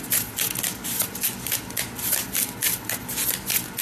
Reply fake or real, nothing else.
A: real